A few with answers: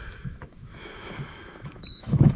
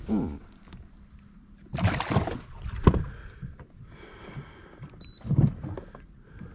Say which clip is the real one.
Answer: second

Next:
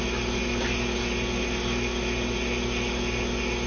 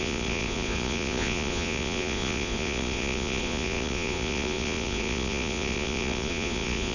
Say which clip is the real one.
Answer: first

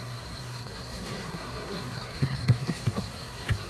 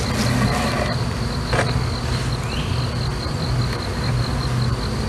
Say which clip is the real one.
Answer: second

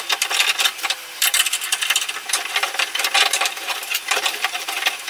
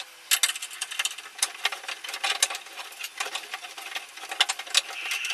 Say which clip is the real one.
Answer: second